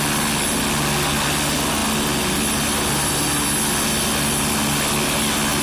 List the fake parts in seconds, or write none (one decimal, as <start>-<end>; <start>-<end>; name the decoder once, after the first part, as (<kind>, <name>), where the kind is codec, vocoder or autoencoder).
none